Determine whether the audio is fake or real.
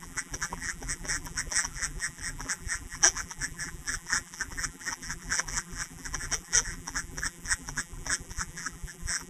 fake